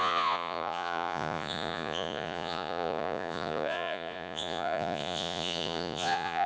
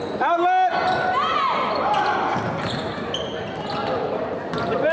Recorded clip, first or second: second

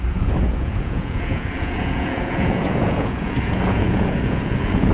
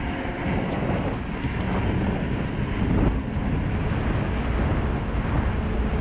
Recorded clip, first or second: second